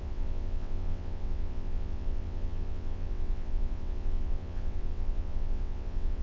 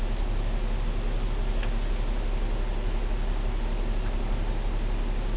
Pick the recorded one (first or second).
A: second